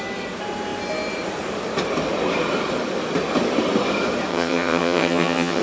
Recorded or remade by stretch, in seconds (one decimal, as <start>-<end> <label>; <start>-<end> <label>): 0.0-4.3 recorded; 4.3-5.6 remade